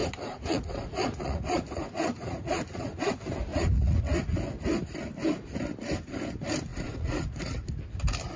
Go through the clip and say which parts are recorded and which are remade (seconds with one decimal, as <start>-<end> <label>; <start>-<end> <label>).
0.0-3.0 remade; 3.0-3.5 recorded; 3.5-4.4 remade; 4.4-6.7 recorded; 6.7-7.6 remade; 7.6-8.4 recorded